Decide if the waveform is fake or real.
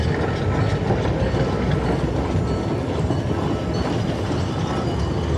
real